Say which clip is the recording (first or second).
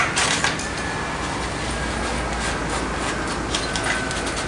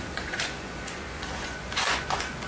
first